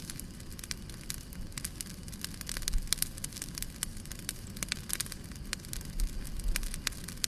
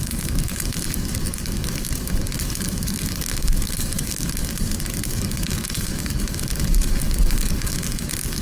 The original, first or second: first